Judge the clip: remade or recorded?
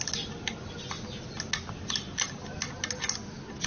recorded